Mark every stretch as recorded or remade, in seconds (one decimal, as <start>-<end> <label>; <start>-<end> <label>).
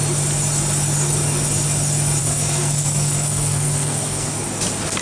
0.0-2.2 recorded; 2.2-4.3 remade; 4.3-5.0 recorded